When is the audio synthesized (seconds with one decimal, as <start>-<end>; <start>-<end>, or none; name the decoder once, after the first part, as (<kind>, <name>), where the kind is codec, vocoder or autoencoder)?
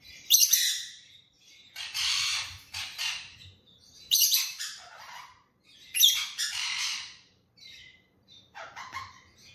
0.0-9.5 (vocoder, BigVGAN v2)